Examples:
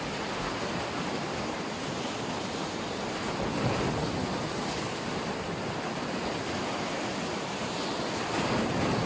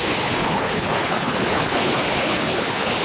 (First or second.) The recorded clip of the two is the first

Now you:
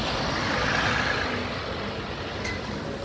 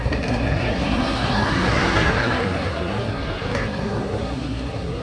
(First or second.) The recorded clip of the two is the first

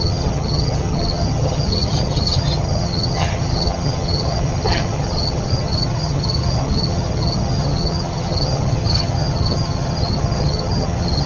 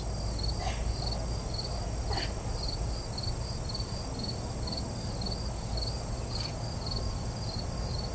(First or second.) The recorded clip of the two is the second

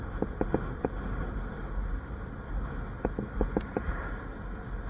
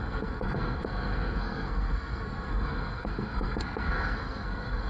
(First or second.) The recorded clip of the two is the first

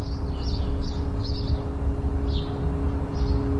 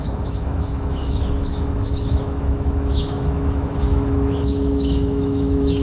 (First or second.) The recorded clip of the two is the first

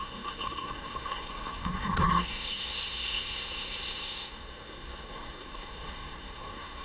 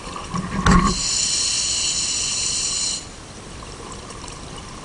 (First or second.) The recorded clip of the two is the second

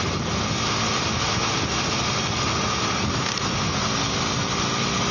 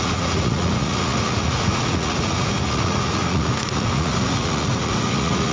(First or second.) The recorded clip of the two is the first